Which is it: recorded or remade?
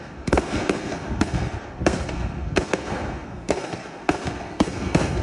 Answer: remade